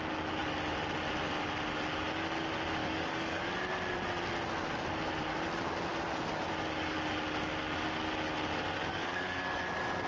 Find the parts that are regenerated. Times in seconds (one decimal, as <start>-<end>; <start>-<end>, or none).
2.8-3.4; 8.9-9.6